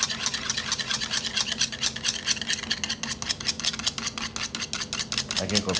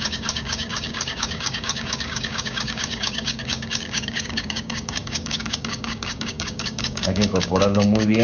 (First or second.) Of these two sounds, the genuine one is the first